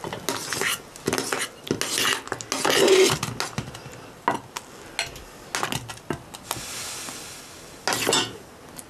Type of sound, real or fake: real